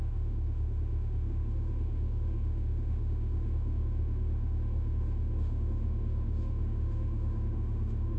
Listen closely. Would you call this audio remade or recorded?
remade